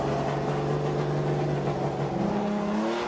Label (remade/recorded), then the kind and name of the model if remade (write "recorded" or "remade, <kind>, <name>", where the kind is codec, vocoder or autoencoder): recorded